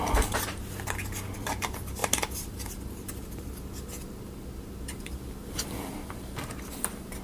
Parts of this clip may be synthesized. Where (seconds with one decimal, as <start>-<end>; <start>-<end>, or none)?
0.0-7.2